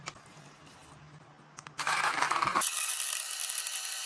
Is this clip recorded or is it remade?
recorded